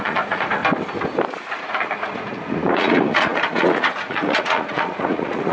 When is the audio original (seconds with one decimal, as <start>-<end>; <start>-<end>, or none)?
0.6-1.5